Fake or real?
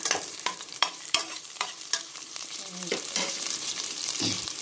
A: fake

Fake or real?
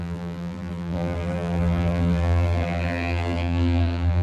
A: fake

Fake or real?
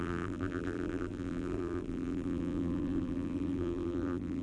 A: fake